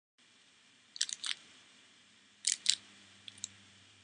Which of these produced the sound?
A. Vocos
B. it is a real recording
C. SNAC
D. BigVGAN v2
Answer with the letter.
D